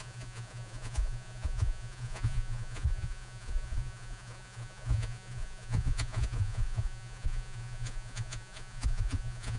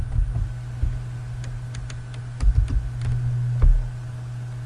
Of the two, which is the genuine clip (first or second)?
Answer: second